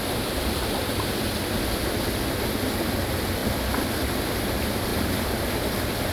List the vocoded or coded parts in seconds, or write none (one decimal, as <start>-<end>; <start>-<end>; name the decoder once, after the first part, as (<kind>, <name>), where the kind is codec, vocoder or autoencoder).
none